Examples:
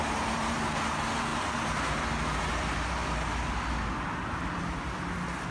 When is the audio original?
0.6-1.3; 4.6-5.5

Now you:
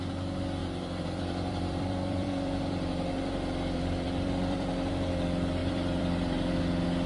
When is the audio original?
0.0-0.6; 4.9-5.6; 6.6-7.1